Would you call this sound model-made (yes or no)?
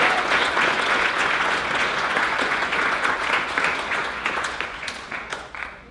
yes